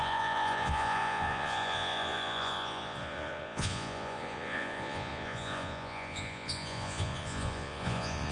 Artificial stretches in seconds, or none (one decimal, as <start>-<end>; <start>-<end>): 0.0-8.3